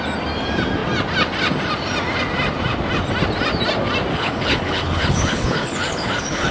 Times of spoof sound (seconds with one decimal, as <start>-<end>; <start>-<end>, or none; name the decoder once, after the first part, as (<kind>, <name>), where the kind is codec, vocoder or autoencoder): 4.1-6.5 (codec, HILCodec)